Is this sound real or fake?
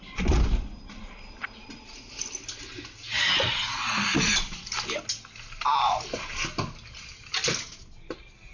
real